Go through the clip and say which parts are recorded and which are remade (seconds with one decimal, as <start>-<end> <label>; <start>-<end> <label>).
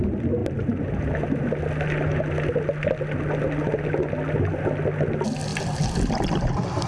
0.0-0.4 recorded; 0.4-0.9 remade; 0.9-5.5 recorded; 5.5-6.9 remade